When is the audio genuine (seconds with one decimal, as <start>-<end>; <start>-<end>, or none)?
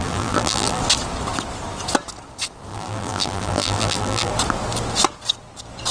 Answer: 0.8-2.7; 4.3-5.9